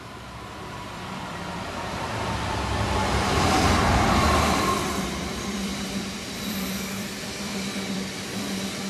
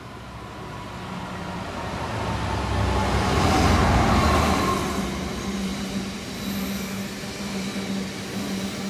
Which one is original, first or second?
second